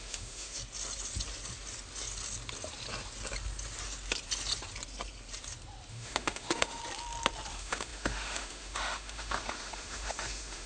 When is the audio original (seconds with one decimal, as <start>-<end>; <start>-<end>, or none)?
0.6-5.9; 6.8-7.5